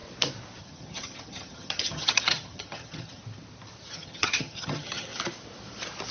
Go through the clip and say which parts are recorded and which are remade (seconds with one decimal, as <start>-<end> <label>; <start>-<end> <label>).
0.0-0.6 recorded; 0.6-3.2 remade; 3.2-3.9 recorded; 3.9-5.1 remade; 5.1-6.1 recorded